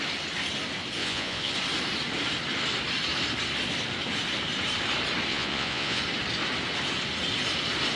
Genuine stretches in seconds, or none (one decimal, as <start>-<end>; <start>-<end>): 0.0-1.0; 1.5-5.3; 6.0-8.0